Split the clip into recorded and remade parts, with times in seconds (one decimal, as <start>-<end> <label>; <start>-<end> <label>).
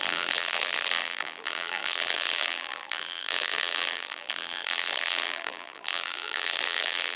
0.0-7.2 remade